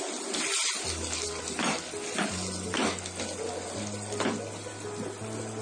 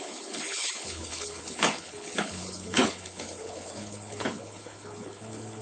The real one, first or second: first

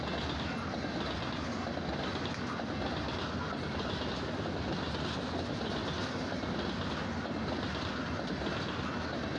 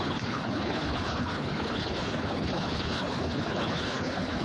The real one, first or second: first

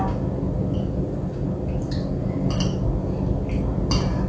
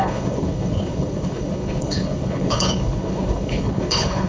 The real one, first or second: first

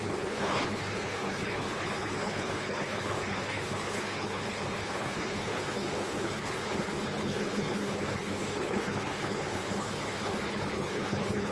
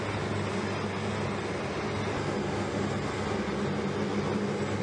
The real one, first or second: second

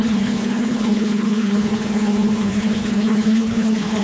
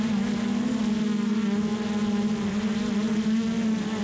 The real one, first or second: second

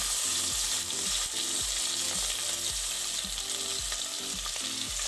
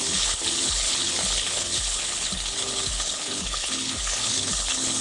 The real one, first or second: first